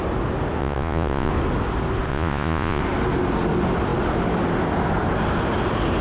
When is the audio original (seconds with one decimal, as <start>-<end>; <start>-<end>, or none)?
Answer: 0.0-0.6; 1.3-2.1; 2.8-6.0